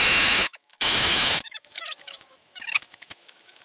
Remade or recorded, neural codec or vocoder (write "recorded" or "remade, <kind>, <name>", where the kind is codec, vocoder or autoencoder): remade, autoencoder, DAC-VAE